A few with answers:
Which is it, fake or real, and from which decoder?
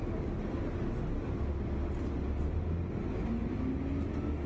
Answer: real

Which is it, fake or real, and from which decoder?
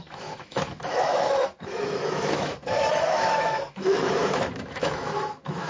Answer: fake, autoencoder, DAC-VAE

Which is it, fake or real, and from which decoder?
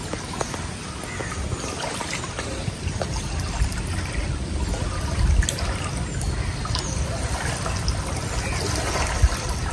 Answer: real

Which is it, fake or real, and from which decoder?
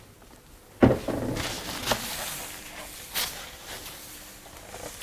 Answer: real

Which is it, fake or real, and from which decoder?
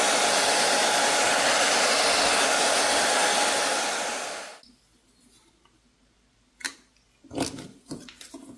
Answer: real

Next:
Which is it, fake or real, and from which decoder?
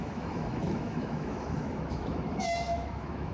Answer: fake, autoencoder, DAC-VAE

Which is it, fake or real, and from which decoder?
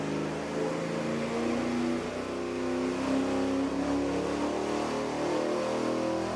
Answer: real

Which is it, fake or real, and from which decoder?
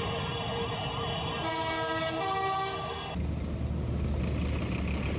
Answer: real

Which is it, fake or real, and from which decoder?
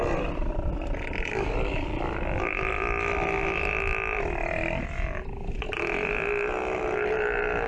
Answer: real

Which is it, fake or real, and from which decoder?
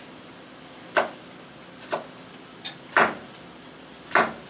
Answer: real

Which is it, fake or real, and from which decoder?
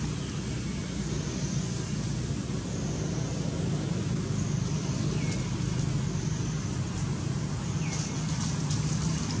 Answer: real